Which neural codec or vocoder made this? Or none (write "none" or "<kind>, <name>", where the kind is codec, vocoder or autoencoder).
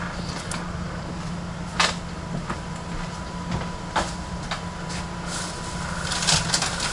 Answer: none